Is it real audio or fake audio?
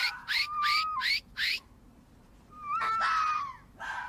real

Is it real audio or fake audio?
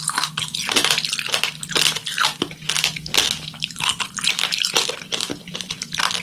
real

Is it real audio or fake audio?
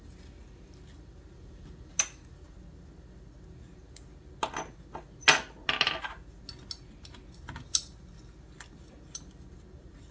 real